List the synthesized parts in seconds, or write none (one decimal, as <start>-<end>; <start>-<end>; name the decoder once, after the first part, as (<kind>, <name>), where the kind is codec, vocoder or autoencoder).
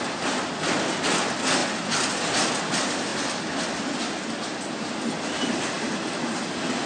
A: none